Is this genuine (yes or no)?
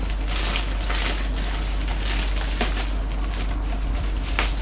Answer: yes